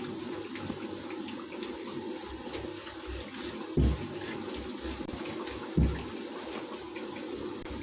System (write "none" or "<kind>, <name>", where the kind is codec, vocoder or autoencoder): none